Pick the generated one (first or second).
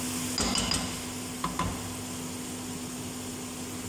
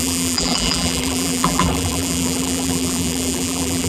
second